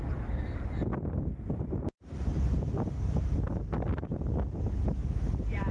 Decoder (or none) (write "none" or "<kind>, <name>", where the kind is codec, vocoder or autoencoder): none